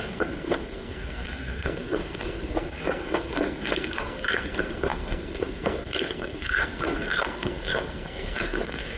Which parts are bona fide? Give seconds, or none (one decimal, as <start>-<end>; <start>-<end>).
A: none